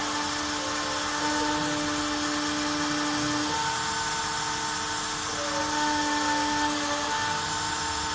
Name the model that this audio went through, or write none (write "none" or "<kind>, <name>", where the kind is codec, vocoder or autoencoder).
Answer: none